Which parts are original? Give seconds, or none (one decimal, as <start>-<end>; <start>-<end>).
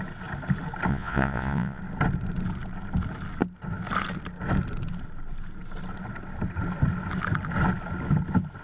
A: 0.0-0.9; 1.8-8.6